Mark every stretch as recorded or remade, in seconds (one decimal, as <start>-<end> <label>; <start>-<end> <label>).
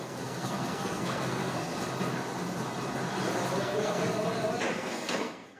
0.0-1.7 remade; 1.7-3.6 recorded; 3.6-4.0 remade; 4.0-4.7 recorded; 4.7-5.6 remade